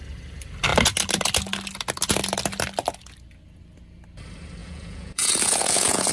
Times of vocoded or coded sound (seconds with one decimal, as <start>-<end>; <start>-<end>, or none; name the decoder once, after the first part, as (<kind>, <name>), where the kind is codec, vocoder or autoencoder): 4.6-6.1 (vocoder, Vocos)